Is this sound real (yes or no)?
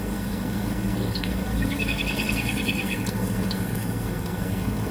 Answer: no